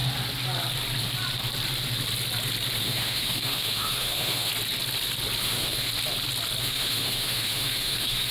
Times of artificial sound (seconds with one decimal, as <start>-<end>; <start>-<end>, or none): 2.8-4.5; 5.4-5.9; 6.6-8.3